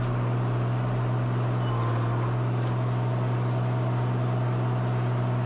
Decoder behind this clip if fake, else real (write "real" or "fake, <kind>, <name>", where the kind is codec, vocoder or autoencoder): real